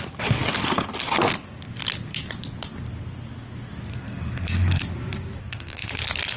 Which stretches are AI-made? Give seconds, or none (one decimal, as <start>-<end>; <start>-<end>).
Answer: 3.9-4.8; 5.4-5.9